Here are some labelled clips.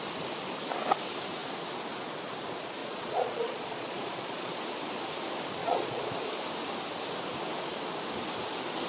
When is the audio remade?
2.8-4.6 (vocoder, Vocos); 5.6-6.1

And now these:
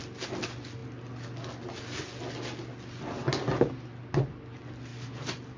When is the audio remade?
4.9-5.6 (vocoder, BigVGAN v2)

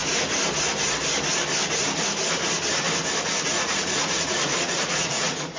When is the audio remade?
3.4-5.6 (vocoder, Vocos)

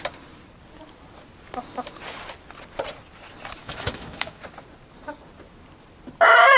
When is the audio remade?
3.6-4.4 (autoencoder, DAC-VAE)

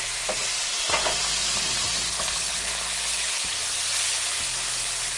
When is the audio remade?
2.1-2.7 (codec, HILCodec)

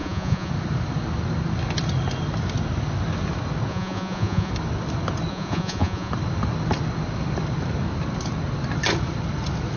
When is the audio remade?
0.0-0.5 (vocoder, Vocos); 3.7-4.5; 5.3-6.1

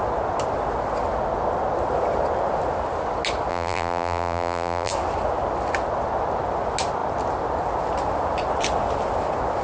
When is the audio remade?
3.5-4.9 (vocoder, BigVGAN v2)

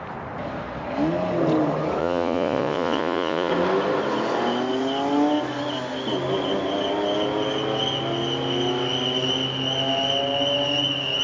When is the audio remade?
2.0-3.5 (vocoder, Vocos)